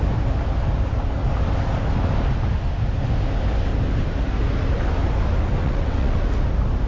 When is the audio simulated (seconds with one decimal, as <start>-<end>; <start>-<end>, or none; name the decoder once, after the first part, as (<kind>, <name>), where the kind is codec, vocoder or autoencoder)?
5.6-6.3 (vocoder, WaveNeXt)